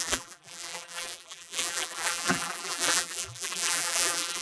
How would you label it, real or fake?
fake